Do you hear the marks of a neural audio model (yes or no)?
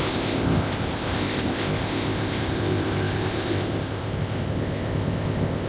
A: yes